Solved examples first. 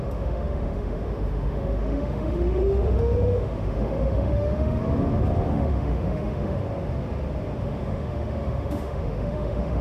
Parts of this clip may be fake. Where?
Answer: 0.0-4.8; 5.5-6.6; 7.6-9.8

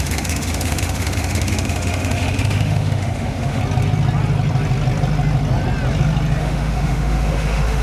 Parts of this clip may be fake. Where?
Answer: 0.0-3.6; 6.4-7.8

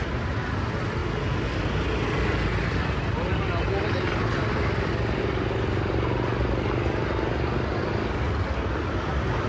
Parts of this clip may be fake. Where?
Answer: none

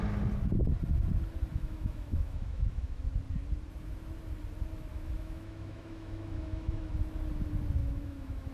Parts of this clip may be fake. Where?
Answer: 1.5-3.0; 4.9-6.9; 7.8-8.5